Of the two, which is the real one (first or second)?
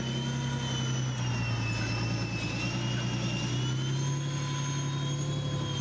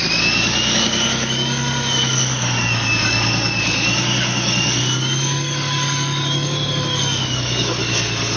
first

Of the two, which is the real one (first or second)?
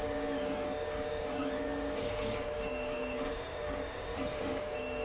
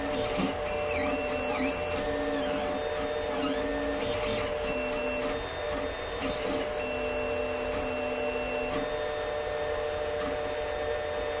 second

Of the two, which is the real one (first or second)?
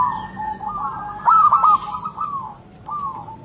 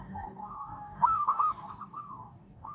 first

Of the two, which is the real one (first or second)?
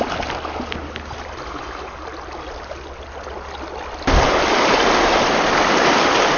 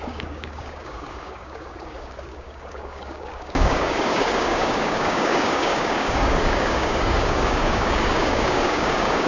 first